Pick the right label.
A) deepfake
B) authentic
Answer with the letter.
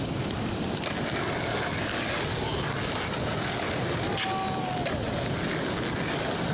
B